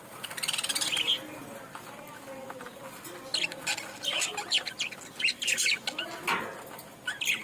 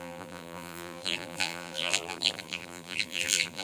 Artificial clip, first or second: second